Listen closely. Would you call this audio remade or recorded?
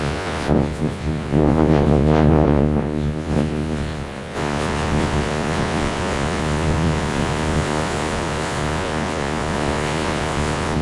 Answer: remade